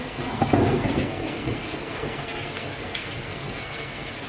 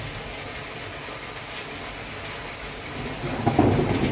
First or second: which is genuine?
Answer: second